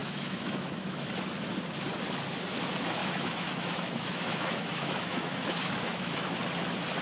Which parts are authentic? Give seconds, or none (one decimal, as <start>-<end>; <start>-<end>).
1.1-3.0; 6.4-7.0